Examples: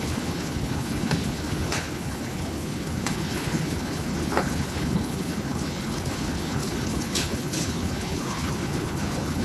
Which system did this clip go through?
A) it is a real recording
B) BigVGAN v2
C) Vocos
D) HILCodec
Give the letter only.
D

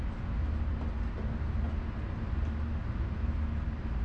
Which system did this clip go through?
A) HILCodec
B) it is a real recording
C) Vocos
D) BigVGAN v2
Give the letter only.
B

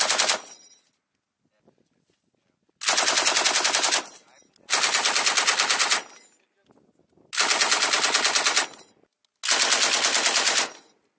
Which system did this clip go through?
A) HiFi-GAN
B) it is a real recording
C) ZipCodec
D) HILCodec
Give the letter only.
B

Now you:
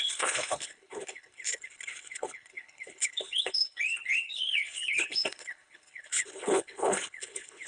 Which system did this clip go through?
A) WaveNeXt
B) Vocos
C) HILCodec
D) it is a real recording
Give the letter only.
C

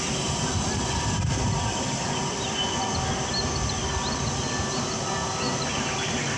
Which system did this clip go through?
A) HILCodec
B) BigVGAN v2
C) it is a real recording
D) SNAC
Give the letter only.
C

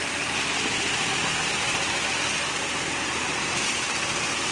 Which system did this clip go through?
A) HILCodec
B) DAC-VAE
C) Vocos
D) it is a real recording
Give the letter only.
D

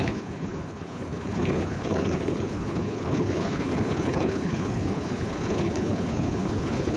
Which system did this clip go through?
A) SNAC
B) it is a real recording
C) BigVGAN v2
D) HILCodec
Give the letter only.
D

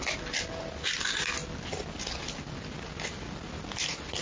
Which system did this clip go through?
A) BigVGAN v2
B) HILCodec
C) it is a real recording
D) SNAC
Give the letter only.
C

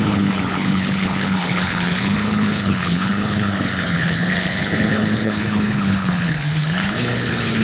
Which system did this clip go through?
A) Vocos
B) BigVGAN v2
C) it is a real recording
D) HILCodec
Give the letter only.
D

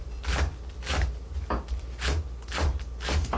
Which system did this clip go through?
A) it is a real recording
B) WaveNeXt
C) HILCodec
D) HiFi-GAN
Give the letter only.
A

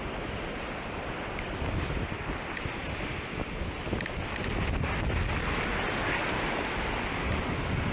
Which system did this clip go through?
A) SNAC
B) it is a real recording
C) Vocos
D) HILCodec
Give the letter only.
B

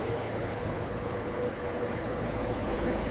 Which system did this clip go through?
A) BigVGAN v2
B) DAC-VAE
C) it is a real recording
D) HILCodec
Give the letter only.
D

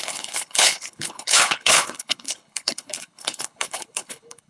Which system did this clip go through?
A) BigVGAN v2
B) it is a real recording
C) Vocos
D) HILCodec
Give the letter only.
D